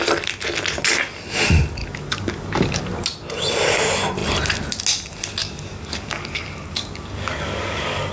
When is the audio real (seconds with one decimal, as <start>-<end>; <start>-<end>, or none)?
0.0-1.8; 2.8-5.4